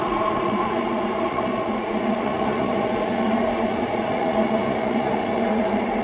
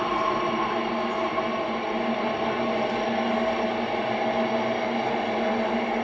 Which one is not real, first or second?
first